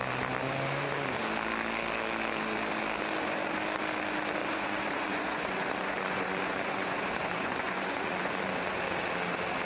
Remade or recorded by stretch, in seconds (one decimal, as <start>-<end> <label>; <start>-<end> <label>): 0.0-4.4 recorded; 4.4-8.8 remade; 8.8-9.7 recorded